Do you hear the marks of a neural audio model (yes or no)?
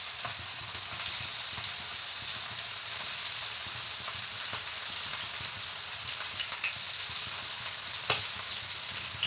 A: no